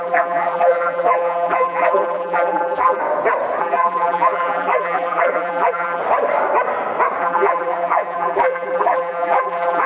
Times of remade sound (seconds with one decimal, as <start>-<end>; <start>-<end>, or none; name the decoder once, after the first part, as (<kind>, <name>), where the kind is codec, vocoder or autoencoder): 0.0-3.0 (vocoder, BigVGAN v2); 3.6-6.0; 7.2-9.9